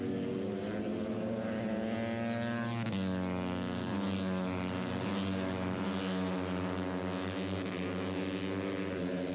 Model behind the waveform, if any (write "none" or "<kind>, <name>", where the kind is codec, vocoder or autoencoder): none